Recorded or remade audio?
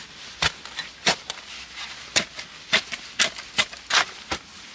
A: recorded